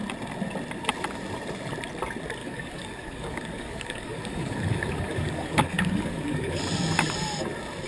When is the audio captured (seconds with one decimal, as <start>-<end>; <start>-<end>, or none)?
0.0-2.4; 6.6-7.9

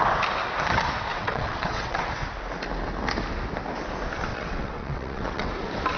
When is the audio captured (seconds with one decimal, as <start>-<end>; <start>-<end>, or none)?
0.0-1.1; 2.1-4.3; 5.5-6.0